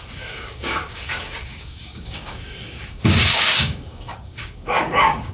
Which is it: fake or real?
fake